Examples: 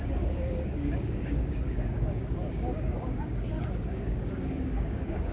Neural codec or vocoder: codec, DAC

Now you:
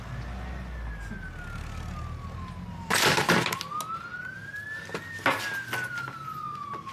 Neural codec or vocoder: none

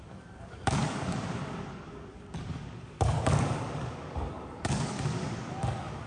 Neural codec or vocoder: codec, DAC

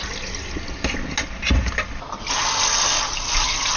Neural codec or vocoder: none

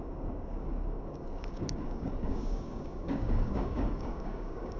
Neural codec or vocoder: codec, DAC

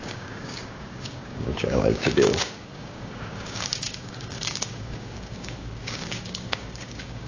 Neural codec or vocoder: codec, DAC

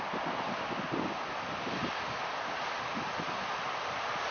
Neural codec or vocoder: none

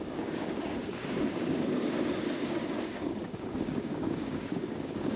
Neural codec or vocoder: codec, DAC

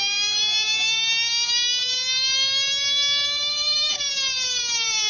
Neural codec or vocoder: none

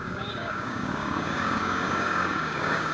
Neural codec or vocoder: codec, DAC